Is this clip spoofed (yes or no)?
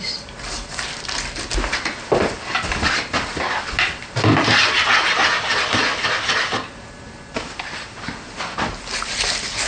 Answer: no